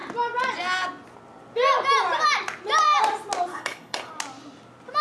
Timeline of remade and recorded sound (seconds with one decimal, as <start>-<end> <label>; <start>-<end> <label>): 0.0-3.5 recorded; 3.5-4.1 remade; 4.1-5.0 recorded